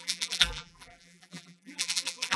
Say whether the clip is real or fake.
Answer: fake